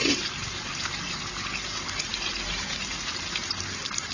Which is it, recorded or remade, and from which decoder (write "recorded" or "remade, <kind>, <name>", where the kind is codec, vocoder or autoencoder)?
remade, vocoder, BigVGAN v2